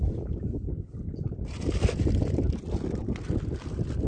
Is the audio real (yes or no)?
yes